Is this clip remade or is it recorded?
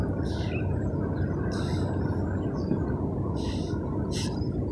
recorded